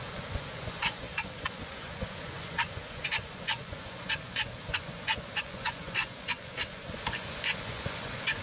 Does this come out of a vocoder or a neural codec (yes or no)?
yes